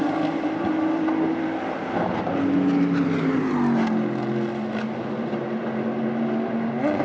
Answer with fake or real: real